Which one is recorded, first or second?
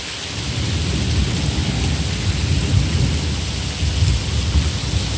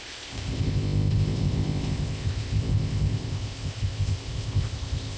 first